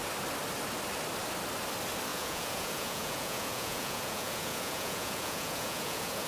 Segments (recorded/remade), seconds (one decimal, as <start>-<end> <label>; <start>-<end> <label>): 0.0-2.1 recorded; 2.1-6.3 remade